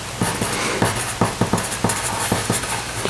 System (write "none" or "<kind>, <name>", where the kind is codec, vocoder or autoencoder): none